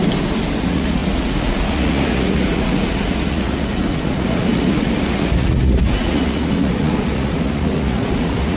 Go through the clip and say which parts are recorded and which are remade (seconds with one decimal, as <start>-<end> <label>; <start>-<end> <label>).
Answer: 0.0-0.6 recorded; 0.6-8.6 remade